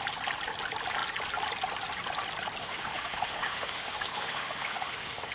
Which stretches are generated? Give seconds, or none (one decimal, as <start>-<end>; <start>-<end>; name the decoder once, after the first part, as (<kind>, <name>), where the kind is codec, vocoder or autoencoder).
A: 2.6-5.3 (autoencoder, DAC-VAE)